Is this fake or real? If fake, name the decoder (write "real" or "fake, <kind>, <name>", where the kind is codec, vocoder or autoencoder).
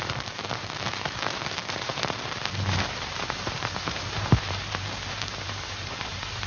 fake, vocoder, BigVGAN v2